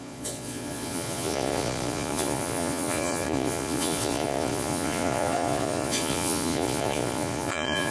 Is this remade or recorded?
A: remade